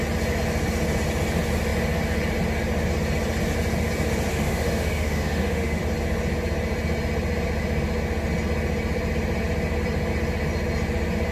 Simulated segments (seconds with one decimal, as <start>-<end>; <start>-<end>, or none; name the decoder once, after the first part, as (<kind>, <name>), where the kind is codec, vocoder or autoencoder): 4.3-5.8 (autoencoder, DAC-VAE)